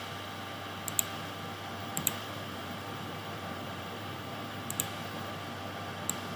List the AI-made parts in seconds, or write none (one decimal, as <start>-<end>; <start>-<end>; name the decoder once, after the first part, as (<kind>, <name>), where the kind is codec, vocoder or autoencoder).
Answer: 1.8-5.3 (vocoder, BigVGAN v2)